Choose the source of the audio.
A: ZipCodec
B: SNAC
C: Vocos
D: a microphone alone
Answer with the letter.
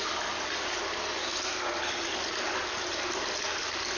D